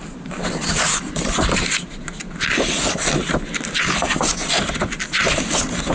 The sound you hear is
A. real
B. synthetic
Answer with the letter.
A